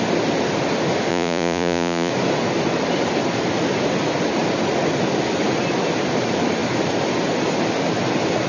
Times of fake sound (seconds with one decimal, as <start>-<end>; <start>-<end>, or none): 1.1-2.1